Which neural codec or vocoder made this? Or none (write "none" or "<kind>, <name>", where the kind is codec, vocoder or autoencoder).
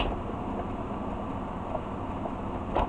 none